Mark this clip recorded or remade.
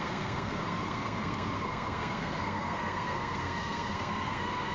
remade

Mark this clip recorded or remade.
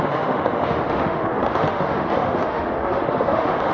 remade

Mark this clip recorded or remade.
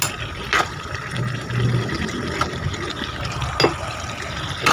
recorded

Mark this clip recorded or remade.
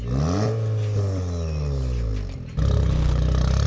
recorded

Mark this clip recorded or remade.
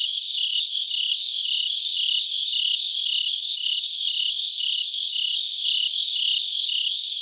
recorded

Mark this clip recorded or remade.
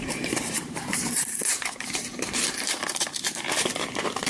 remade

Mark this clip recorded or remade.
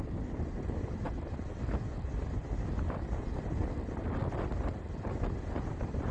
recorded